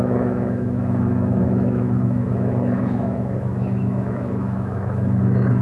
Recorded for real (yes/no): no